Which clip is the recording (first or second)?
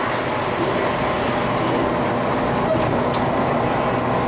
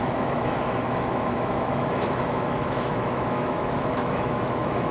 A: first